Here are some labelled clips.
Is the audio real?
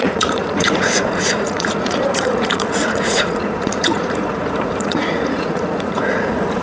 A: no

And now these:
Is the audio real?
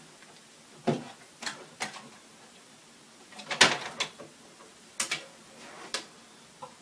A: yes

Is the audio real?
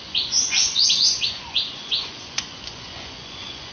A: no